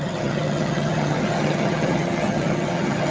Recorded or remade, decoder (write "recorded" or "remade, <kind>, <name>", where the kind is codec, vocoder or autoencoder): remade, vocoder, HiFi-GAN